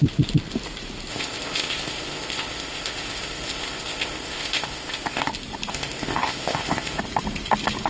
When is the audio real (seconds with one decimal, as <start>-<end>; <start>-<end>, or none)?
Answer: 0.0-1.1; 5.3-5.7; 7.0-7.9